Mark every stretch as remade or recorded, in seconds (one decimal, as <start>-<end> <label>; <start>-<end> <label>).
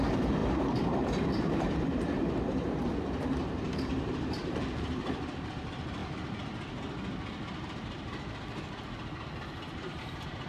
0.0-2.9 remade; 2.9-3.5 recorded; 3.5-6.0 remade; 6.0-10.0 recorded; 10.0-10.5 remade